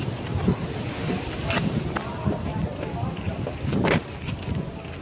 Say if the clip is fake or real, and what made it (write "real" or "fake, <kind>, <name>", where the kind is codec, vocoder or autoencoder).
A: real